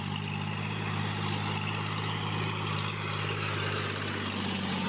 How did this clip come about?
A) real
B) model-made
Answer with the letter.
A